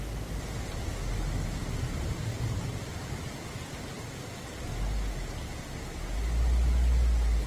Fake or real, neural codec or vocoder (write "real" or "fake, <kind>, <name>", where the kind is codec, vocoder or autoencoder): real